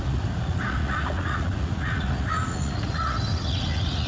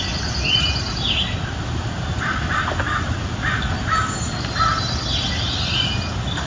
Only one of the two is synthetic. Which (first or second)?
first